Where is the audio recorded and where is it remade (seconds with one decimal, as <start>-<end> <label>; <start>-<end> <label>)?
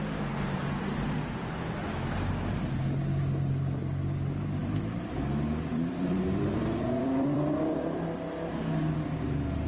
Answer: 0.0-4.6 recorded; 4.6-5.2 remade; 5.2-5.7 recorded; 5.7-7.8 remade; 7.8-9.7 recorded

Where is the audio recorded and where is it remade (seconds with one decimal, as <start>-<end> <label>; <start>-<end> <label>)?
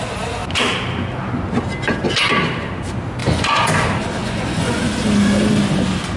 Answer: 0.0-3.2 recorded; 3.2-3.7 remade; 3.7-4.2 recorded; 4.2-4.8 remade; 4.8-6.2 recorded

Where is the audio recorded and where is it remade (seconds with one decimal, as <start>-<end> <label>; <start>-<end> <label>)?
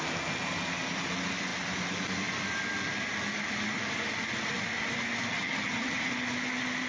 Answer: 0.0-5.3 recorded; 5.3-6.1 remade; 6.1-6.9 recorded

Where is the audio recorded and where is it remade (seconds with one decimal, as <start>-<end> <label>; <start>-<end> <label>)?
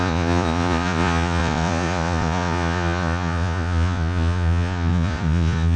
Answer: 0.0-5.8 remade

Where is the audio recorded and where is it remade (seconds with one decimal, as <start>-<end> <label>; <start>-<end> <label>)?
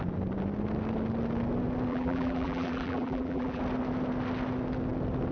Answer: 0.0-1.9 recorded; 1.9-3.6 remade; 3.6-5.3 recorded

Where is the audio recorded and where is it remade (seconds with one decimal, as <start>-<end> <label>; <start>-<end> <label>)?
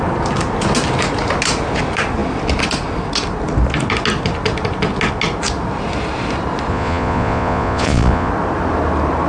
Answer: 0.0-6.7 recorded; 6.7-8.3 remade; 8.3-9.3 recorded